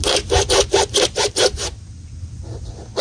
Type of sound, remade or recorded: recorded